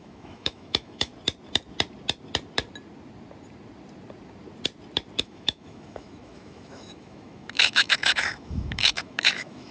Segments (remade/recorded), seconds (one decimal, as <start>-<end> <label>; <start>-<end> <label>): 0.0-1.1 remade; 1.1-5.2 recorded; 5.2-9.7 remade